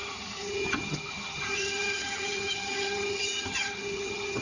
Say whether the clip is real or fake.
fake